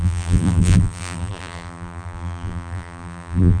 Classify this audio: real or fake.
fake